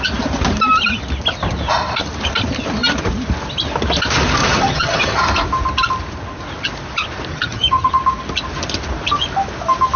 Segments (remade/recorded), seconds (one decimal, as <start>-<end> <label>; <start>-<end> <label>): 0.0-4.4 recorded; 4.4-5.2 remade; 5.2-7.3 recorded; 7.3-7.9 remade; 7.9-10.0 recorded